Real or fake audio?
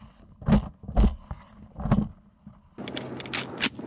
real